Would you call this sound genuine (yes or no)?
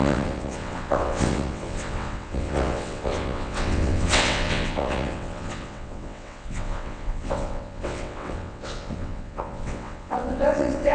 no